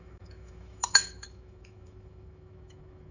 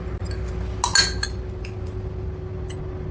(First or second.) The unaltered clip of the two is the second